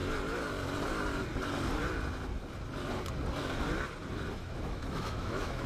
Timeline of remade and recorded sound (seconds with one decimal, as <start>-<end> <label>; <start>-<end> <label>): 0.0-4.4 recorded; 4.4-5.7 remade